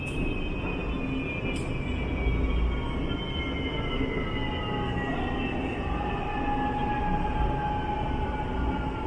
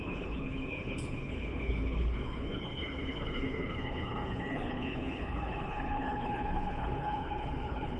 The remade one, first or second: second